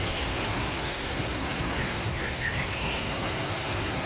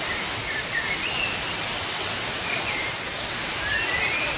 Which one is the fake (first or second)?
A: first